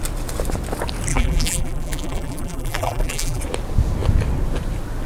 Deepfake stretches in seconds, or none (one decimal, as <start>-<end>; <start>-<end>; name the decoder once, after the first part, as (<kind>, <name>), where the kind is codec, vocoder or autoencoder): 1.1-3.4 (vocoder, BigVGAN v2)

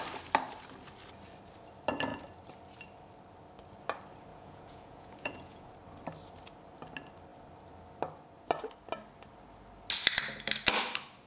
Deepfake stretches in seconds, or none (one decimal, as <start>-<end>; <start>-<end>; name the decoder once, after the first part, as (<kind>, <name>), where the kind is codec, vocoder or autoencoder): 4.3-5.7 (vocoder, Vocos)

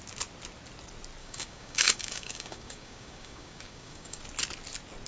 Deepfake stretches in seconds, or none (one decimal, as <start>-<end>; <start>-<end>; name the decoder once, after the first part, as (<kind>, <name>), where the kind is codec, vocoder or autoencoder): 1.2-4.2 (codec, DAC)

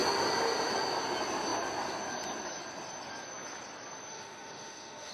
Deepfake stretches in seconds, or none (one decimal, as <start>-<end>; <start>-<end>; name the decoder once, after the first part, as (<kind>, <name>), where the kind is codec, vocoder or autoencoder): 4.1-5.1 (autoencoder, DAC-VAE)

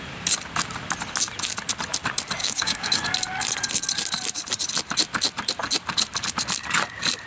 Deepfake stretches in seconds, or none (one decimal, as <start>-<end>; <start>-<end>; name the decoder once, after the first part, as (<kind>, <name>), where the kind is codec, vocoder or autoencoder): 2.4-3.0 (codec, DAC)

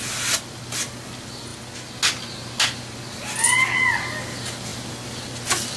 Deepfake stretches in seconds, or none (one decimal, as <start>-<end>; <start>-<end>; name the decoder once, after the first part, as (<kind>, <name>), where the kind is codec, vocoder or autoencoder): none

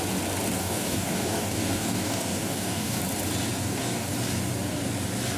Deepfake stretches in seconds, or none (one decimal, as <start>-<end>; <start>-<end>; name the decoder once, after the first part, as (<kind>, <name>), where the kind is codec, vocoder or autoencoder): 0.6-3.0 (codec, DAC); 3.6-4.1

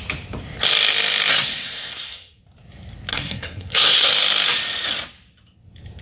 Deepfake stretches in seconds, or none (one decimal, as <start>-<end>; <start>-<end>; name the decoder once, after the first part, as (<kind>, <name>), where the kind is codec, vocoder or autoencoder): 1.3-2.4 (codec, SNAC); 3.1-4.1